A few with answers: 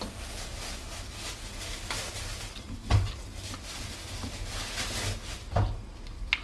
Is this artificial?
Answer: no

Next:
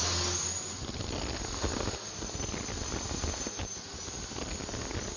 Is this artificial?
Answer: no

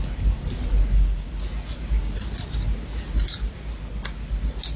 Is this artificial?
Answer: no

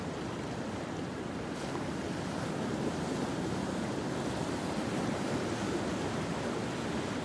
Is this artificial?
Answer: no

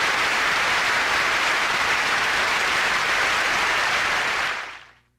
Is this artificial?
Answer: yes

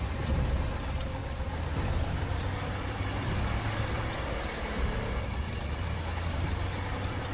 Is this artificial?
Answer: yes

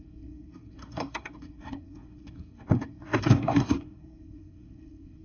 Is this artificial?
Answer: yes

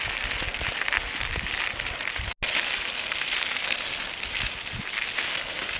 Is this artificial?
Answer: no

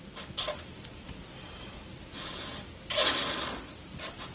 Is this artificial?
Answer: no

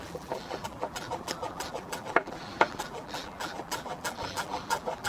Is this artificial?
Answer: yes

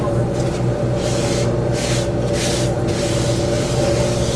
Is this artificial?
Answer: no